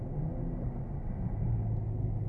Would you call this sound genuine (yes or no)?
yes